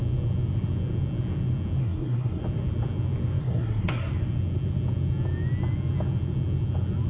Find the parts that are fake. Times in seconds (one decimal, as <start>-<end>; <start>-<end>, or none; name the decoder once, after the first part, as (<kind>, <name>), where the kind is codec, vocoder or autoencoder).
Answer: 1.8-2.4 (codec, SNAC); 3.4-4.1